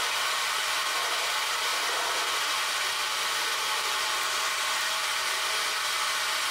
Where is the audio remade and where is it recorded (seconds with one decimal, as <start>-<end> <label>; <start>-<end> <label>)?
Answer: 0.0-6.5 recorded